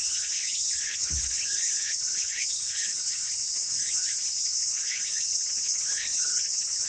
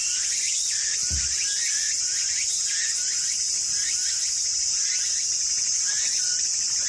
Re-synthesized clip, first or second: first